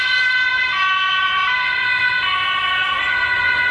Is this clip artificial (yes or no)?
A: no